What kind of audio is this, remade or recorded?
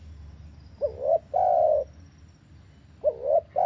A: recorded